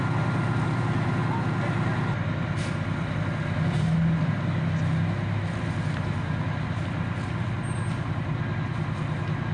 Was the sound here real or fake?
real